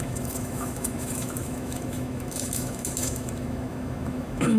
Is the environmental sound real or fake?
fake